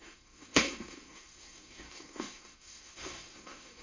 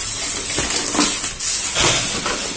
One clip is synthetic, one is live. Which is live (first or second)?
second